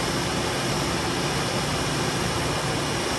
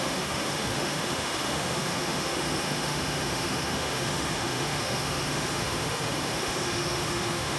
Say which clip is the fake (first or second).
second